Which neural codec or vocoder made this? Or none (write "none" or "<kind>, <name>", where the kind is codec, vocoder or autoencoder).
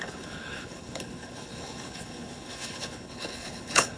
codec, HILCodec